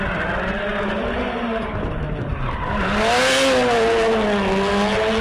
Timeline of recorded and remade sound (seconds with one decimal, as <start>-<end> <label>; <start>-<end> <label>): 0.0-0.7 recorded; 0.7-3.1 remade; 3.1-5.2 recorded